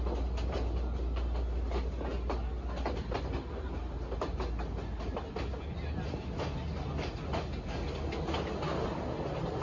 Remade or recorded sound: recorded